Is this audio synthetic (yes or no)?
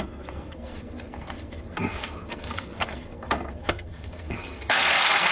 yes